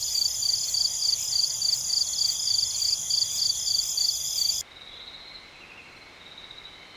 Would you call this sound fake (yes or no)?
no